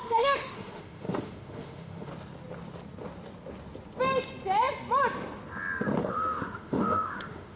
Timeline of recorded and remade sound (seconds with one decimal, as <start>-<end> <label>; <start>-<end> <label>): 0.0-2.1 remade; 2.1-6.0 recorded; 6.0-7.6 remade